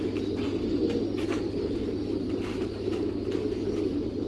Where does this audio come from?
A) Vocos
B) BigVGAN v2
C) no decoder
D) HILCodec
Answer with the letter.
C